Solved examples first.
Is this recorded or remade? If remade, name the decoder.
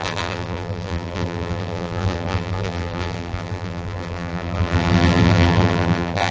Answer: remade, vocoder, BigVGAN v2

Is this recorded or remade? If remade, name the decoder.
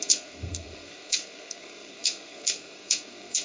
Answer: remade, codec, SNAC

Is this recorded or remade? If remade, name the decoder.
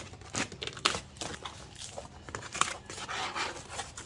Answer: recorded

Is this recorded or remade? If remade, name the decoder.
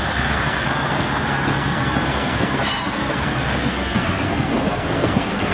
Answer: remade, codec, SNAC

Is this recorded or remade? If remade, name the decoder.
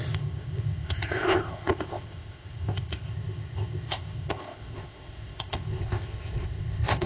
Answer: remade, codec, ZipCodec